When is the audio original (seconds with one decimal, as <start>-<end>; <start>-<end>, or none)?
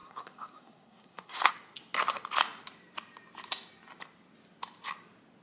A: 1.5-5.4